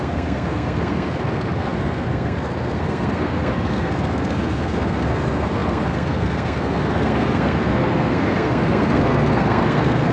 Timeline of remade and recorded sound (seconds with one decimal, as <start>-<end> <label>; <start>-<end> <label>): 0.0-10.1 remade